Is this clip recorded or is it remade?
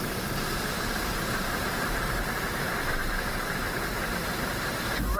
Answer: remade